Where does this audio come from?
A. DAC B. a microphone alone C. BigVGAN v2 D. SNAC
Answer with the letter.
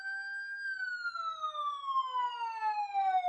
B